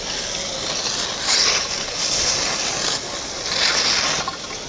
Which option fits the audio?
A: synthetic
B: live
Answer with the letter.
B